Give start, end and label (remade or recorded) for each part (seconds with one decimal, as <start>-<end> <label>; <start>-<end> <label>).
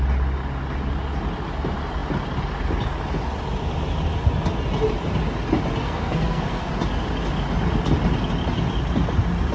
0.0-5.8 recorded; 5.8-6.7 remade; 6.7-9.5 recorded